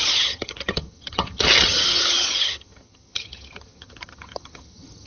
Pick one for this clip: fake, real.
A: fake